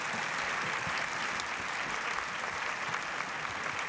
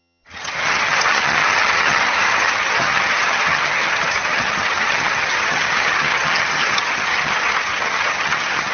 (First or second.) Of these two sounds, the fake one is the second